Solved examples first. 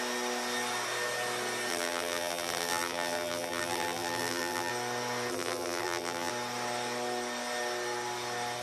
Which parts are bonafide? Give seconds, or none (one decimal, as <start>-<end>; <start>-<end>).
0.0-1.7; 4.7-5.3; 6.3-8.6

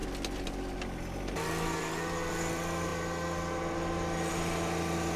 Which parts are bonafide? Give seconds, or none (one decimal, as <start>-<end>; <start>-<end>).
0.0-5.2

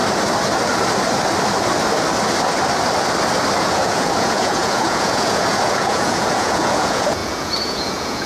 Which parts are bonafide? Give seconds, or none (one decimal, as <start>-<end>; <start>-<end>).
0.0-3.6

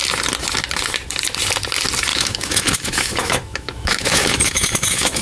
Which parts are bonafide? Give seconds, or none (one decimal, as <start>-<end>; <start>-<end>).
0.0-2.1

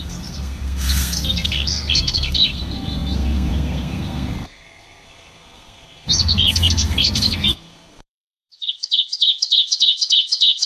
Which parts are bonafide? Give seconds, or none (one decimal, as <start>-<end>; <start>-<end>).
none

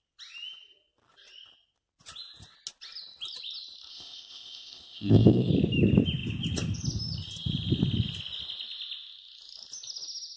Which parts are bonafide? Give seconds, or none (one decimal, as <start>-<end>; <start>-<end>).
0.0-3.9; 5.5-10.4

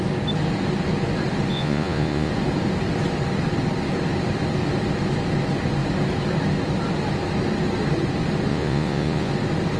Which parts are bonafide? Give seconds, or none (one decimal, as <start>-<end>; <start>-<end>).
0.0-1.5; 2.3-8.5; 9.3-9.8

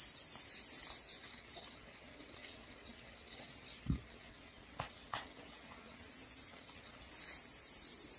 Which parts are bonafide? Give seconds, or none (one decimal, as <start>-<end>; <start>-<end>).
0.0-1.2; 6.1-6.5; 7.1-8.2